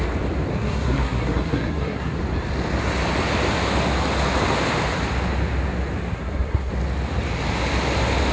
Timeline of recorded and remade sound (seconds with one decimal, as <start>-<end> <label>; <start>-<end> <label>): 0.0-0.5 recorded; 0.5-2.2 remade; 2.2-6.1 recorded; 6.1-6.7 remade; 6.7-8.3 recorded